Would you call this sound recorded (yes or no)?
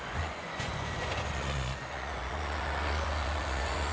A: no